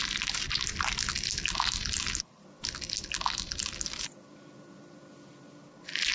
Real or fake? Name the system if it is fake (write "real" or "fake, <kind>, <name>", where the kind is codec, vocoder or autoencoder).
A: real